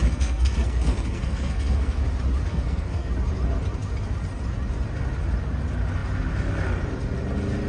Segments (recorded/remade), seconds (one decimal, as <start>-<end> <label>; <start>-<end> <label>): 0.0-2.0 remade; 2.0-2.5 recorded; 2.5-3.1 remade; 3.1-7.7 recorded